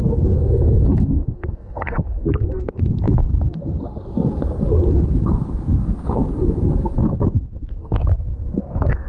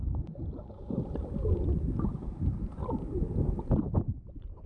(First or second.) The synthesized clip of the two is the first